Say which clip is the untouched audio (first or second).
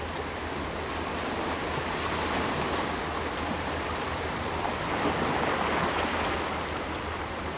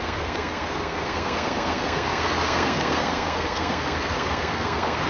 first